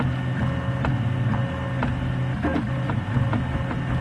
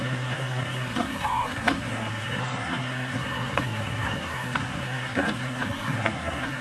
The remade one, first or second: second